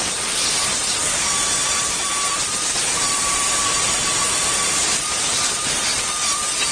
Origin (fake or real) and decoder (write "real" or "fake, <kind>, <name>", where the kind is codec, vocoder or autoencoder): real